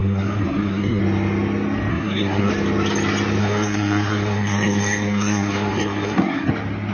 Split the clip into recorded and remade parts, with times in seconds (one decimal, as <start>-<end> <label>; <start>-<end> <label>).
0.0-1.0 remade; 1.0-1.9 recorded; 1.9-2.5 remade; 2.5-3.4 recorded; 3.4-6.5 remade; 6.5-6.9 recorded